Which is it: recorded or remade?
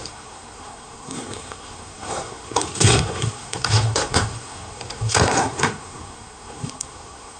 remade